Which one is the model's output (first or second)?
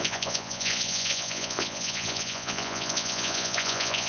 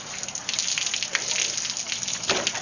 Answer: first